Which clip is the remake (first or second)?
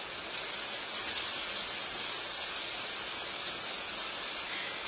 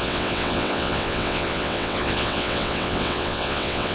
second